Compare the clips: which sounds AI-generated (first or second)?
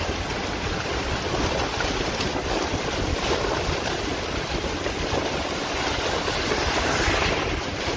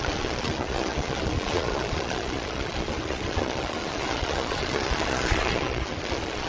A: second